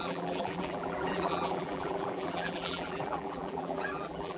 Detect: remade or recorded remade